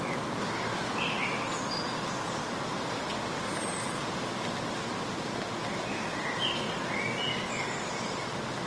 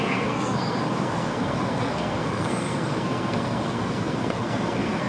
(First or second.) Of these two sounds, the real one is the first